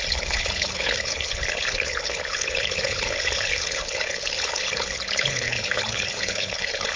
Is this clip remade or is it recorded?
remade